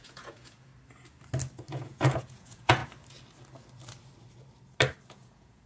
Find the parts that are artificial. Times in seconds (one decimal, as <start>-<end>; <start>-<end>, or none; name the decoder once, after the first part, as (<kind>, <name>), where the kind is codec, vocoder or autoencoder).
0.0-0.7 (vocoder, Vocos); 1.7-2.8; 5.1-5.7